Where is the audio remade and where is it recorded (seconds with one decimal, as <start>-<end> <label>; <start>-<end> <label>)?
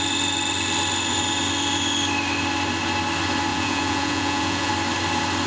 0.0-3.5 recorded; 3.5-4.7 remade; 4.7-5.5 recorded